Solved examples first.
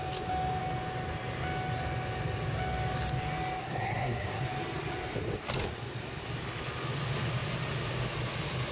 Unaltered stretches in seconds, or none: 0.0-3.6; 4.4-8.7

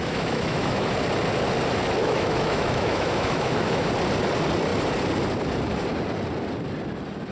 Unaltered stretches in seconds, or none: 0.9-2.0; 3.9-7.3

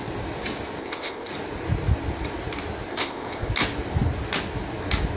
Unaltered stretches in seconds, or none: 0.0-0.8; 1.3-2.9; 3.5-5.2

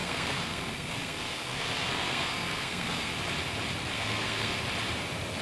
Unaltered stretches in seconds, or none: 3.2-3.9; 4.6-5.4

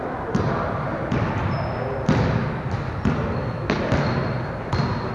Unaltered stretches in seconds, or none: 0.0-5.1

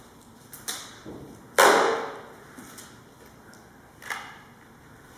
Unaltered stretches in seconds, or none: 0.0-5.2